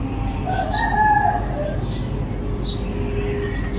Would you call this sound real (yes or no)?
yes